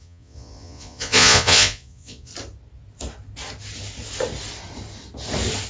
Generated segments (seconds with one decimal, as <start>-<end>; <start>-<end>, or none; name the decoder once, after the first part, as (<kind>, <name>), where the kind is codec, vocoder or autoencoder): 0.0-2.3 (vocoder, Vocos)